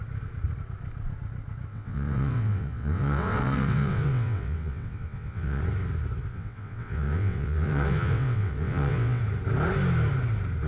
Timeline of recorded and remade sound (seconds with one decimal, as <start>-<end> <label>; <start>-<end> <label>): 0.0-1.7 recorded; 1.7-5.6 remade; 5.6-6.3 recorded; 6.3-9.2 remade; 9.2-10.7 recorded